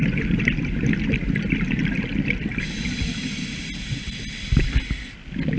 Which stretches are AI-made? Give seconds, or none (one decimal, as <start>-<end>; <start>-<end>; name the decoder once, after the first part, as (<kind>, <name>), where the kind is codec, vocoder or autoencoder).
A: none